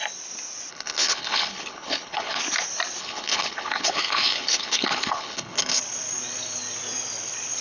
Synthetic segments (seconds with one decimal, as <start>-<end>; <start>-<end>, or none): 0.7-2.4; 3.0-5.8